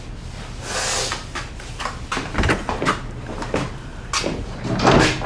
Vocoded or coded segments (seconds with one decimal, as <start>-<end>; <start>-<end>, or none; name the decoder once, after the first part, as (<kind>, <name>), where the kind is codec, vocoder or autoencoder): none